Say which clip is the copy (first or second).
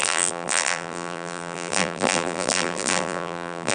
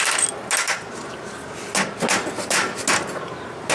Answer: first